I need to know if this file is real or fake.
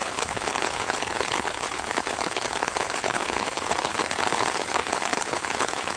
fake